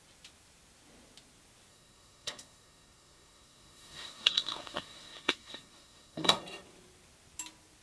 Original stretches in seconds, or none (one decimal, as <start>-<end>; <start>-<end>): 0.0-1.7; 6.4-7.8